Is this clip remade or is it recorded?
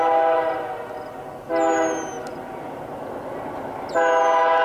recorded